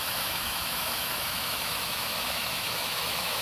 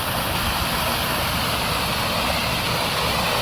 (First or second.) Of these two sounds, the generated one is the first